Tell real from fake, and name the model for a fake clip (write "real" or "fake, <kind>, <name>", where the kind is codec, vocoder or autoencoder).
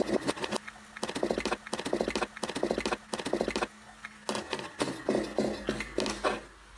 real